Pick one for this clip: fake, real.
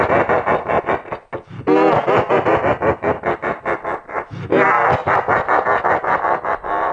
real